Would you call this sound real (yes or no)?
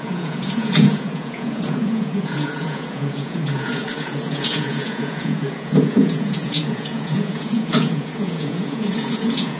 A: no